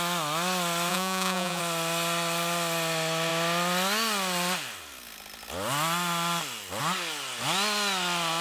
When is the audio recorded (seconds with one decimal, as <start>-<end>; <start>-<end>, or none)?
0.0-0.9; 1.6-8.4